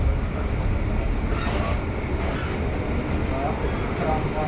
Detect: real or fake real